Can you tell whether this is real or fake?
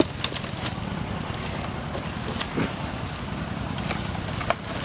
real